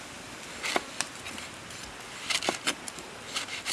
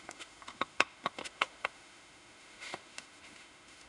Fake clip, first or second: second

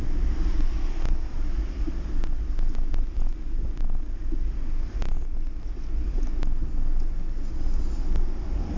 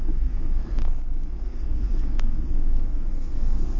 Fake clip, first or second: second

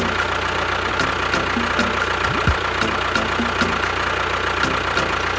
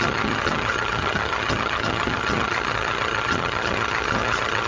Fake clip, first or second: second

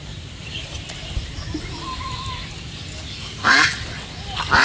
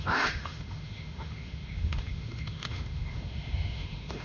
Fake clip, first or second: second